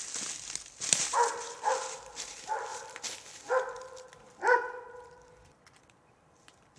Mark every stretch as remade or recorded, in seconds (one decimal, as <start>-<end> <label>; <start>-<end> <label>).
0.0-6.8 recorded